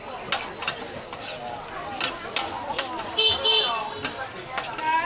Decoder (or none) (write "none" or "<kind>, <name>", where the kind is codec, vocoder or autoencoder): none